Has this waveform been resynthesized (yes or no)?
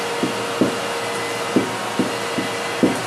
no